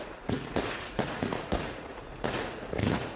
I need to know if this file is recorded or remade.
remade